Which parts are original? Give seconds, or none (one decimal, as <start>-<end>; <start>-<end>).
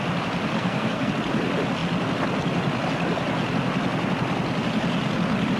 0.0-0.5; 1.1-5.6